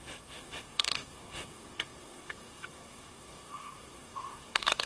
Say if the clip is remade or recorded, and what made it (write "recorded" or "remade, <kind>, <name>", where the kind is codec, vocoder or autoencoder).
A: remade, codec, SNAC